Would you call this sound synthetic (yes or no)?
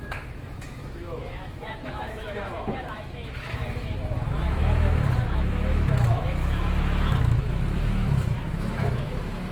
yes